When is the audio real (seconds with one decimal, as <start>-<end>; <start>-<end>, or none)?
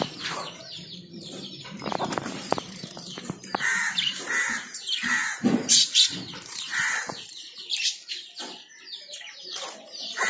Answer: 0.6-1.2; 6.7-9.0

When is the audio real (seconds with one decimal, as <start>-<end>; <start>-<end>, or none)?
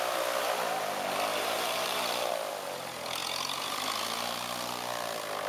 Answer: 0.0-1.3; 2.3-5.5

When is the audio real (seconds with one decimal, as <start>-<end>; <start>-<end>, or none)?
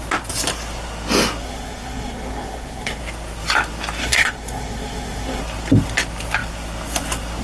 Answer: 0.0-1.4; 3.0-4.0; 5.4-7.4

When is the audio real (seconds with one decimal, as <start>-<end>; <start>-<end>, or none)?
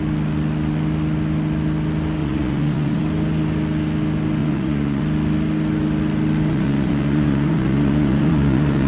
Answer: 0.0-2.2; 3.0-4.4; 5.0-6.5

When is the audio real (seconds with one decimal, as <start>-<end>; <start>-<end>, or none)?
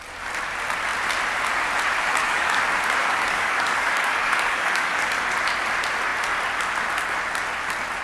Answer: 0.0-2.1; 2.6-3.0; 5.0-8.0